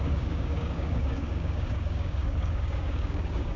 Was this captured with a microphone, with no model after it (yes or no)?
no